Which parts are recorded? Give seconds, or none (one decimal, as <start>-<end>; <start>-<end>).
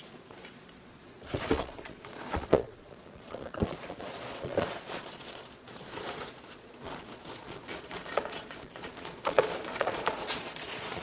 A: none